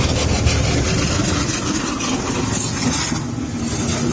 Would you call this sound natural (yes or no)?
yes